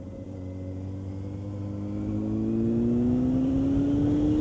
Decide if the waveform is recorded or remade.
recorded